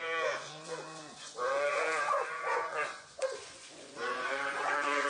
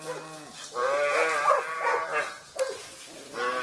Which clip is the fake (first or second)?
first